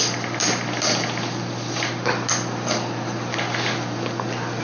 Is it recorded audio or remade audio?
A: recorded